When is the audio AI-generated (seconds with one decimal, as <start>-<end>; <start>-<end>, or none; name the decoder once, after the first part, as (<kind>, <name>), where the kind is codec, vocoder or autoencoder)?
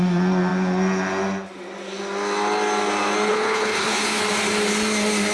3.3-4.2 (codec, HILCodec)